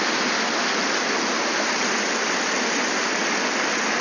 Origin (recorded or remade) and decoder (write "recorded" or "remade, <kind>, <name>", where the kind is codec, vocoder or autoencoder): recorded